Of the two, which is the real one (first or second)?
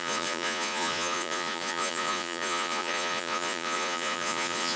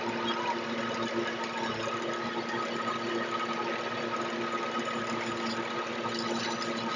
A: second